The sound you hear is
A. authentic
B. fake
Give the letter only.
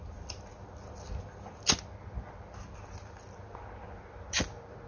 A